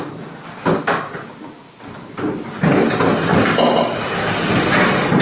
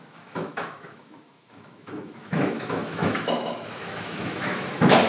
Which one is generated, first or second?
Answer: second